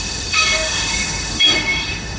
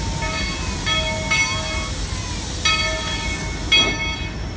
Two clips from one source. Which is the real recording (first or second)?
second